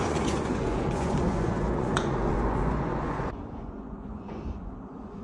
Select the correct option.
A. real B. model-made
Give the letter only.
B